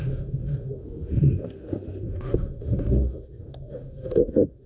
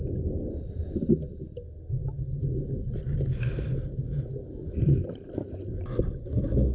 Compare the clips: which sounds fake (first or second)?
first